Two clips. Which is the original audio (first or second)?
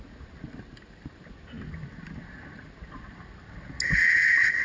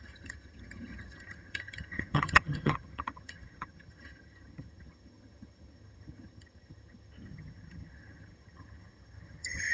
first